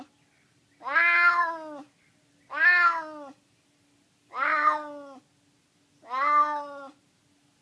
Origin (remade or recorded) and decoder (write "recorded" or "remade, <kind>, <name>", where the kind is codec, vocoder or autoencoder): recorded